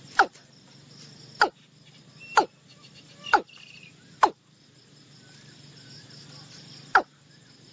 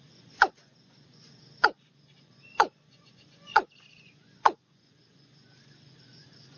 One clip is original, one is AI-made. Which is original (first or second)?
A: first